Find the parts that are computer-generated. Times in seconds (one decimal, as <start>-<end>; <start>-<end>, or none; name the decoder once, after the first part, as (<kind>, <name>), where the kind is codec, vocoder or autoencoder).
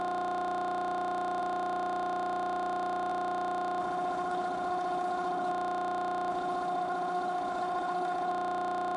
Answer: 3.8-5.5 (codec, HILCodec); 6.3-8.3